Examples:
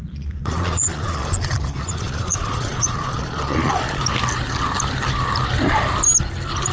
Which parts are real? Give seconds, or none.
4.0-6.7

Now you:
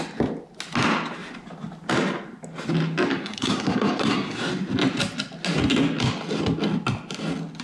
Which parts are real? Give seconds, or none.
0.0-3.1; 4.4-7.6

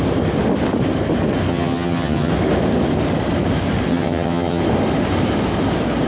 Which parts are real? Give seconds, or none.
0.0-1.5; 2.3-3.9; 4.6-6.1

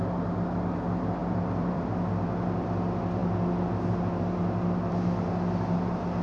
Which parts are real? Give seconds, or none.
0.0-1.2; 1.9-6.2

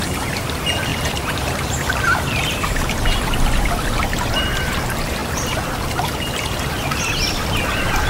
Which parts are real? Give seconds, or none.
0.0-0.9; 3.7-8.1

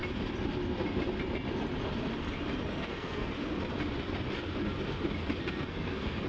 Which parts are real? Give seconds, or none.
0.0-2.7; 3.3-5.4